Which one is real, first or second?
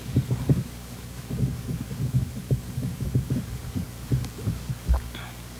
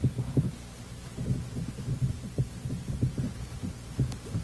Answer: second